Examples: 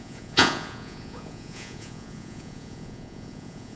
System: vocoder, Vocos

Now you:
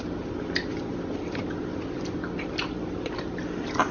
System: none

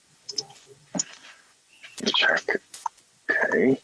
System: vocoder, Vocos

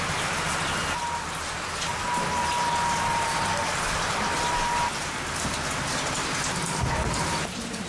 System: none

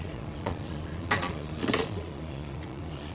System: vocoder, Vocos